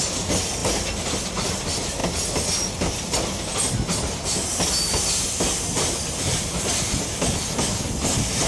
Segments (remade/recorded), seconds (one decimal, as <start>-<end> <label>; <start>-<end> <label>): 0.0-8.5 recorded

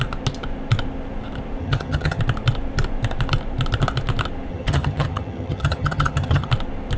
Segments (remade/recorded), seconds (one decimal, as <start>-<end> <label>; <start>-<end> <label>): 0.0-1.6 recorded; 1.6-2.2 remade; 2.2-4.5 recorded; 4.5-6.5 remade; 6.5-7.0 recorded